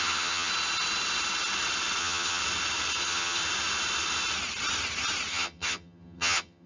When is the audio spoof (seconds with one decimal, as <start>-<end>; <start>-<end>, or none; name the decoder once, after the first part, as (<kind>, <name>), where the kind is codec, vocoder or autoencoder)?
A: 0.0-0.5 (vocoder, HiFi-GAN); 2.0-2.4; 3.0-3.4; 5.3-6.7